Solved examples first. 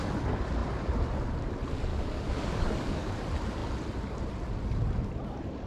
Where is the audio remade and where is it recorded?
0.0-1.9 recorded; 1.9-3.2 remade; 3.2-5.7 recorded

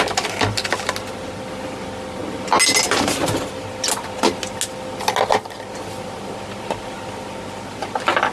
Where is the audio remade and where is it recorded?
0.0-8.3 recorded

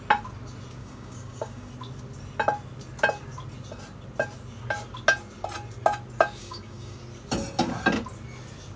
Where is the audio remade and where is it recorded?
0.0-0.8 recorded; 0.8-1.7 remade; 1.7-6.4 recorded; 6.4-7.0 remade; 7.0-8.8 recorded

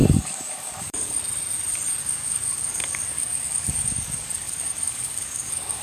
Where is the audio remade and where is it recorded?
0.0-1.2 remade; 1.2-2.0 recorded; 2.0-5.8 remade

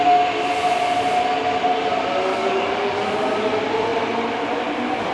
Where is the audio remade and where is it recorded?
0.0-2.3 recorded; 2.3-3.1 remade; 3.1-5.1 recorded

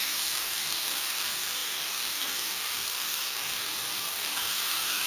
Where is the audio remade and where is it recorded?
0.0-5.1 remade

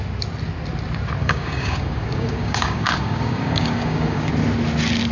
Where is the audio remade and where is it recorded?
0.0-1.2 recorded; 1.2-4.3 remade; 4.3-5.1 recorded